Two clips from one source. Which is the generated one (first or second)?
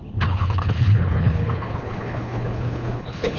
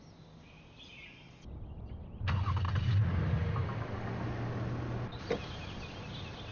first